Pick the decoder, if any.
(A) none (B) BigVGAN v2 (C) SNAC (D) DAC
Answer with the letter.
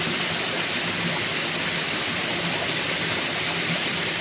A